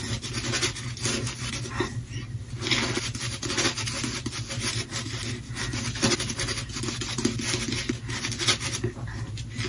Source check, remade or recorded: recorded